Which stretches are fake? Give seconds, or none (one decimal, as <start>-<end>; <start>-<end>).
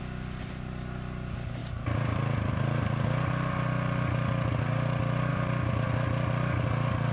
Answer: none